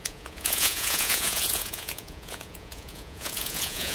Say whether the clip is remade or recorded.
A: remade